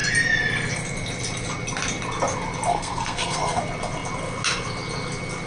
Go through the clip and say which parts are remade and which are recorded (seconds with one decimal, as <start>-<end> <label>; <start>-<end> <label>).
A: 0.0-2.7 recorded; 2.7-3.6 remade; 3.6-5.5 recorded